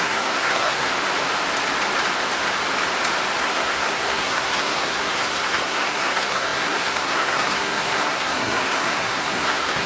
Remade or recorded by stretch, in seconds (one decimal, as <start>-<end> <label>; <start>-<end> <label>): 0.0-0.9 remade; 0.9-3.4 recorded; 3.4-9.9 remade